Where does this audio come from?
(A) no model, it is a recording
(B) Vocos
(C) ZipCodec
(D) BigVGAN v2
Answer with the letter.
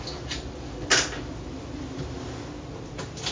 A